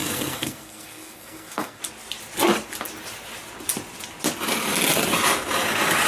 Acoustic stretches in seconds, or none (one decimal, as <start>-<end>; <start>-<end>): 1.8-6.1